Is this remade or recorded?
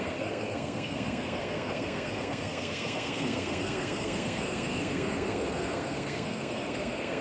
remade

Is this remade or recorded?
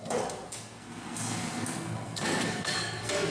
remade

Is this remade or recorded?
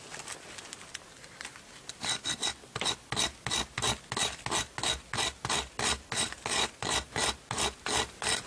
recorded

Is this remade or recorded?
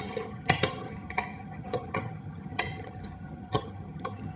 remade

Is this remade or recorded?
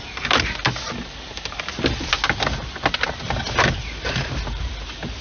recorded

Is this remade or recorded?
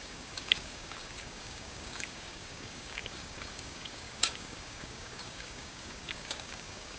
remade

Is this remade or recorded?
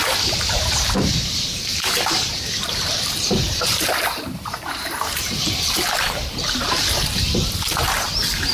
remade